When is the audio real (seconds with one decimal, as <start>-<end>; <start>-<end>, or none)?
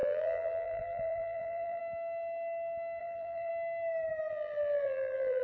1.8-3.0; 3.5-4.3